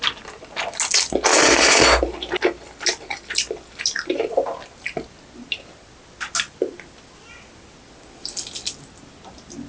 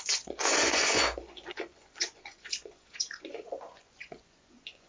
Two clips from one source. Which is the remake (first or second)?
second